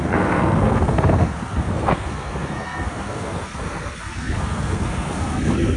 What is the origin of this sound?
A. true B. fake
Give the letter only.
B